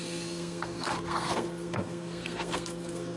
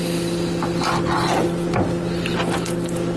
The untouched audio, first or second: second